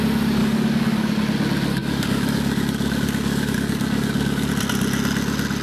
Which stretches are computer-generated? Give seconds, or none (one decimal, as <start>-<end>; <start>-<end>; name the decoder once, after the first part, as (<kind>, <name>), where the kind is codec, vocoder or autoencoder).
0.4-1.1 (codec, DAC); 1.7-4.5